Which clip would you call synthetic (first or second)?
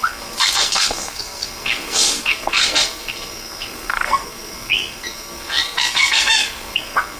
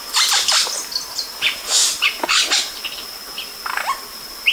first